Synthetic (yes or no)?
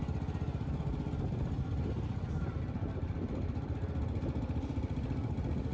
no